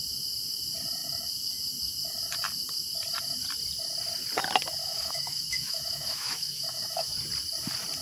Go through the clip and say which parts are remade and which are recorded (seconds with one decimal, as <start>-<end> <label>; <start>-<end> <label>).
0.0-4.8 recorded; 4.8-7.1 remade; 7.1-8.0 recorded